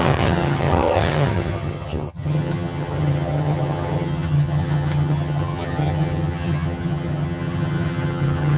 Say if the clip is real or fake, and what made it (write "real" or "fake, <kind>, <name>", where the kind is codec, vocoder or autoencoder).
fake, vocoder, HiFi-GAN